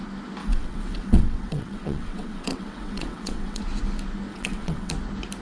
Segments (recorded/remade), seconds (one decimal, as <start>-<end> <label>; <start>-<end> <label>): 0.0-0.4 recorded; 0.4-3.6 remade; 3.6-4.3 recorded; 4.3-4.9 remade; 4.9-5.4 recorded